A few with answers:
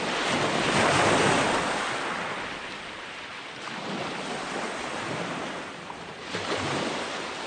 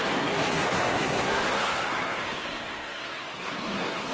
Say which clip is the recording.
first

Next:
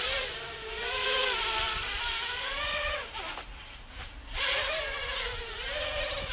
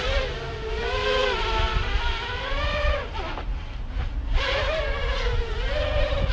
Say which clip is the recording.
second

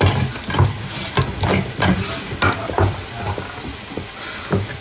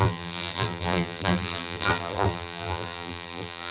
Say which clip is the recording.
first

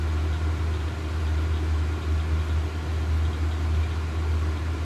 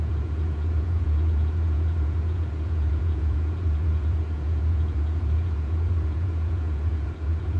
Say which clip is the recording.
first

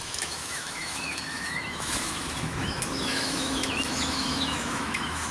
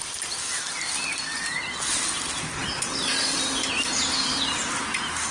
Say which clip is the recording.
second